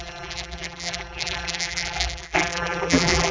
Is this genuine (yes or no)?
no